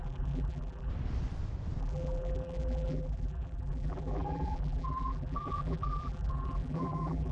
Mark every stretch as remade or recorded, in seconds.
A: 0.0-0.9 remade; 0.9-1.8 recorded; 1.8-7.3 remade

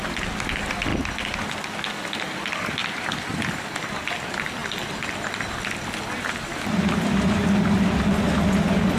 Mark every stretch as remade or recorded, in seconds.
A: 0.0-9.0 recorded